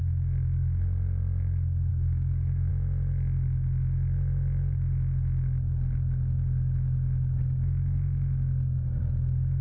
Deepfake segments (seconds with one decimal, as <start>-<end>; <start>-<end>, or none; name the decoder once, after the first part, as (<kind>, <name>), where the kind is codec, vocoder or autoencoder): 1.9-2.7 (codec, DAC)